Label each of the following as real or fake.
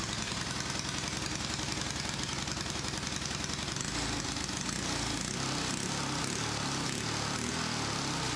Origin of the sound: real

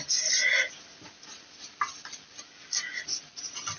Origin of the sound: real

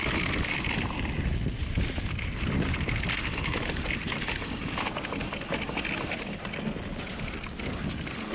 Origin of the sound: real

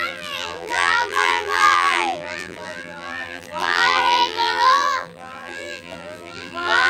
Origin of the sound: fake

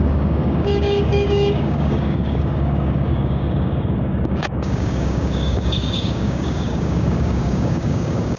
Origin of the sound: fake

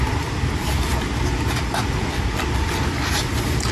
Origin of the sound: fake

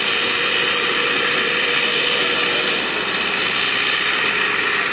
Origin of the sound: real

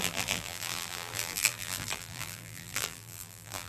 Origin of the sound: fake